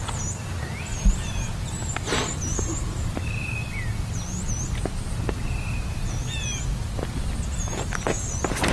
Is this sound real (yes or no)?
yes